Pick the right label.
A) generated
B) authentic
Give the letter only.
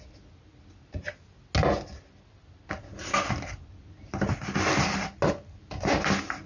B